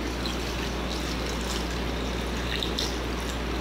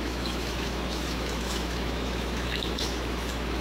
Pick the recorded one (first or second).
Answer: first